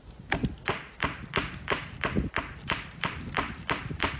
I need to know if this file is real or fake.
real